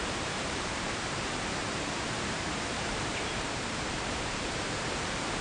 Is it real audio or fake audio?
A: fake